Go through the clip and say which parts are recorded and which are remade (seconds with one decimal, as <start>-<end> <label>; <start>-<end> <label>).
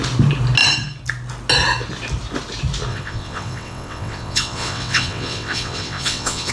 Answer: 0.0-2.9 recorded; 2.9-6.5 remade